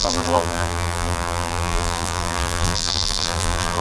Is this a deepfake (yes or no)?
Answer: yes